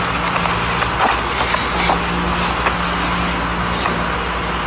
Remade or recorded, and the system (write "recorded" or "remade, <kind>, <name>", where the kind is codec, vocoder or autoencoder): recorded